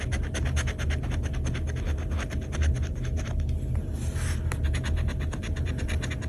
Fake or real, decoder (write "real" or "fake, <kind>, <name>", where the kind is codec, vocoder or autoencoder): real